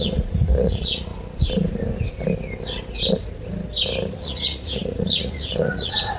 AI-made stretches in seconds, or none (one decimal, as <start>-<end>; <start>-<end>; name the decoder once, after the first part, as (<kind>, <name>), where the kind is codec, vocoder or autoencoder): 0.0-1.1 (vocoder, Vocos); 4.2-6.2